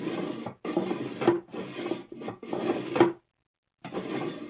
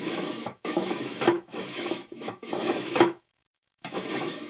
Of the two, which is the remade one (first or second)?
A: second